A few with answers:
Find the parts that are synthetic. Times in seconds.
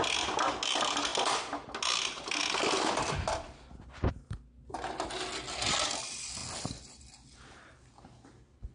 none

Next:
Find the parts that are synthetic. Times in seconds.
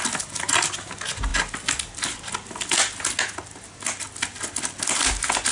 none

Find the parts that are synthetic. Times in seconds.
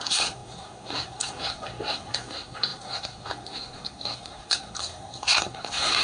0.0-6.0 (codec, SNAC)